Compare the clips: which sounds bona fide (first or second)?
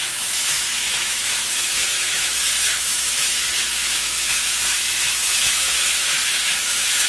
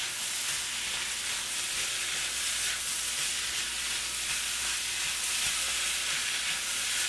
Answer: second